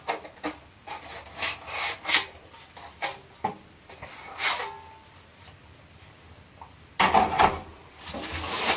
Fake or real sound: real